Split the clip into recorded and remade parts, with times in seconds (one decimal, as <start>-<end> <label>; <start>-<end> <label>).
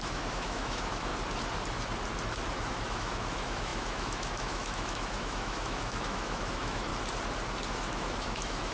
0.0-1.1 remade; 1.1-2.7 recorded; 2.7-6.9 remade; 6.9-7.7 recorded; 7.7-8.7 remade